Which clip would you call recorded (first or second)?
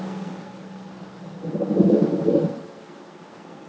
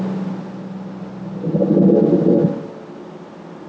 second